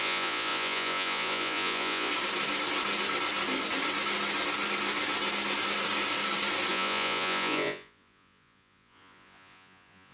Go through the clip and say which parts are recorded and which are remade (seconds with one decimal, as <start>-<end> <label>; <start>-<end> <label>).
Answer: 0.0-2.1 remade; 2.1-6.7 recorded; 6.7-10.1 remade